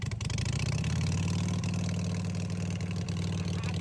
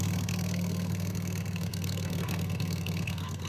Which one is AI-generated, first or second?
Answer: second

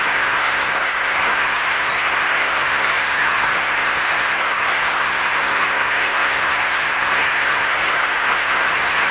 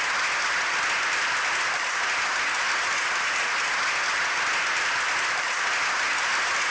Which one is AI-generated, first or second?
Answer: first